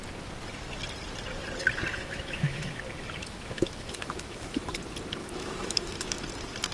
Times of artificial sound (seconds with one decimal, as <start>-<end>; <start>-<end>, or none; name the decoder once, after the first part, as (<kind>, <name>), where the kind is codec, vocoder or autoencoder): 1.9-2.8 (autoencoder, DAC-VAE); 3.2-4.8; 5.2-6.2